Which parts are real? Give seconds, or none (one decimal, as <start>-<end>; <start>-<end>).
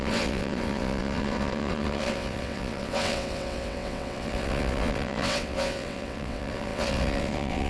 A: none